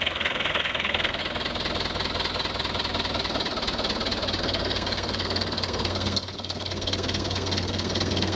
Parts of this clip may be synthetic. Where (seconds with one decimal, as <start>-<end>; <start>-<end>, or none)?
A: 0.0-1.2; 4.4-8.4